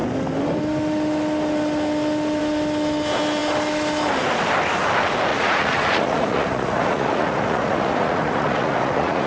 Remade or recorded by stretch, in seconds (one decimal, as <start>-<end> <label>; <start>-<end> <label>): 0.0-5.3 recorded; 5.3-9.3 remade